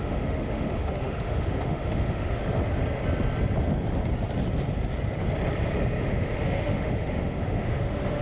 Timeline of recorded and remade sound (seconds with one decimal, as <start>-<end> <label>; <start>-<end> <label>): 0.0-2.4 remade; 2.4-6.0 recorded; 6.0-8.2 remade

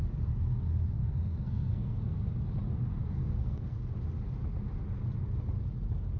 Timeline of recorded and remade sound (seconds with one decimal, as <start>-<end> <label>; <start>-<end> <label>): 0.0-1.0 recorded; 1.0-2.3 remade; 2.3-3.0 recorded; 3.0-3.9 remade; 3.9-6.2 recorded

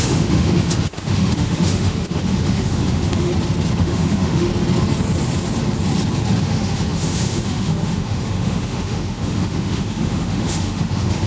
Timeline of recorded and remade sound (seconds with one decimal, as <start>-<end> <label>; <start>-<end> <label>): 0.0-3.3 remade; 3.3-3.8 recorded; 3.8-4.5 remade; 4.5-6.4 recorded; 6.4-11.3 remade

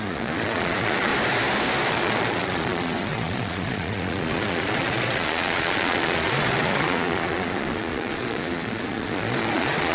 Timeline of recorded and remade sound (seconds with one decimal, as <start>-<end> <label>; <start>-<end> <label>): 0.0-1.1 remade; 1.1-1.9 recorded; 1.9-9.9 remade

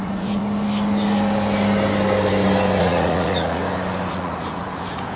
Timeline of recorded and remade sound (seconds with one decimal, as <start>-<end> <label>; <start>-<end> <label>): 0.0-0.4 remade; 0.4-2.8 recorded; 2.8-3.6 remade; 3.6-4.1 recorded; 4.1-5.2 remade

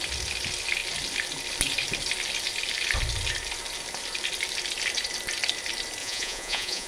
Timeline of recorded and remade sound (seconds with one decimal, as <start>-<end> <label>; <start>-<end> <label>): 0.0-6.0 recorded; 6.0-6.9 remade